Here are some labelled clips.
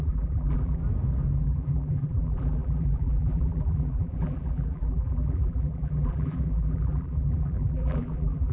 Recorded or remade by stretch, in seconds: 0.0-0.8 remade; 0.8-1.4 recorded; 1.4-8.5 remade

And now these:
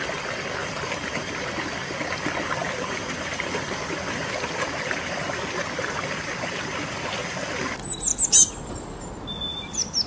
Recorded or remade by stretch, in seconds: 0.0-0.6 recorded; 0.6-1.4 remade; 1.4-2.6 recorded; 2.6-7.7 remade; 7.7-8.1 recorded; 8.1-8.7 remade; 8.7-9.5 recorded; 9.5-10.1 remade

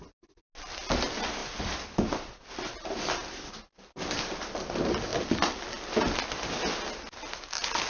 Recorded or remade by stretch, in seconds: 0.0-1.4 recorded; 1.4-3.5 remade; 3.5-7.9 recorded

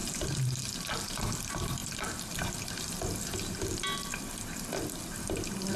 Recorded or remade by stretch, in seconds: 0.0-1.8 recorded; 1.8-2.7 remade; 2.7-5.8 recorded

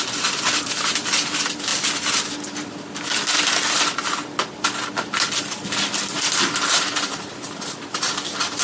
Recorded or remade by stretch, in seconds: 0.0-8.6 recorded

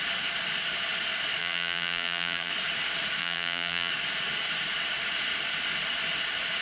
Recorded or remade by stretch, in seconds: 0.0-1.4 recorded; 1.4-2.5 remade; 2.5-3.2 recorded; 3.2-3.9 remade; 3.9-6.6 recorded

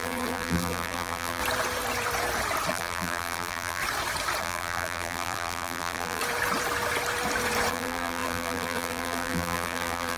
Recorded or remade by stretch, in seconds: 0.0-1.4 remade; 1.4-2.7 recorded; 2.7-3.8 remade; 3.8-4.4 recorded; 4.4-6.2 remade; 6.2-7.7 recorded; 7.7-10.2 remade

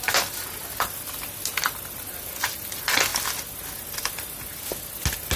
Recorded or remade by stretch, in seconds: 0.0-5.4 recorded